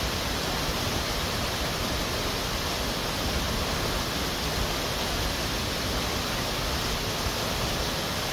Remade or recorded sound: recorded